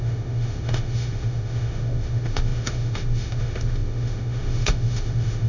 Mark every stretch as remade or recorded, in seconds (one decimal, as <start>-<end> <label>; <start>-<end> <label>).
0.0-5.5 remade